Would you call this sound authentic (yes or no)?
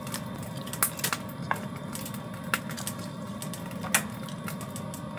yes